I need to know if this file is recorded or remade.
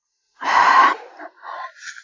recorded